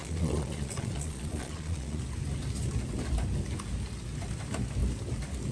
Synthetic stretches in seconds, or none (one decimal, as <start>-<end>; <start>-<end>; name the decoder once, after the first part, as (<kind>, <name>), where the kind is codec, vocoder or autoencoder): 0.0-2.0 (vocoder, Vocos)

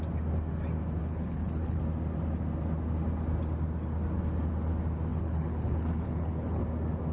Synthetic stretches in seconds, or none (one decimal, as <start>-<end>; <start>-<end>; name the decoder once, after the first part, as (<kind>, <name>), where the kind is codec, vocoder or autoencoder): 1.0-1.8 (codec, HILCodec); 5.1-6.6